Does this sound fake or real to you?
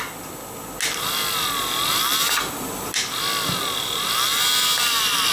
real